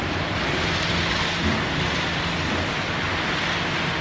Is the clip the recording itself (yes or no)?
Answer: yes